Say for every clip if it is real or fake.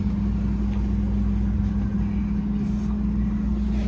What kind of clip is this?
real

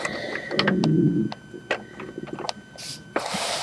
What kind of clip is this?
real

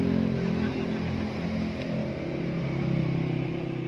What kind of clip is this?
real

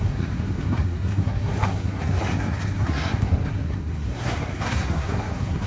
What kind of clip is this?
fake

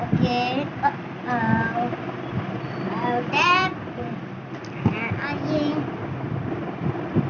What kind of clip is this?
real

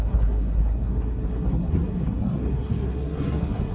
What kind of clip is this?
fake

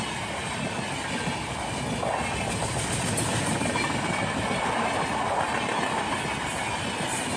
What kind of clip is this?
real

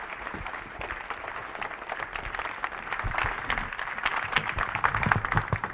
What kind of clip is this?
real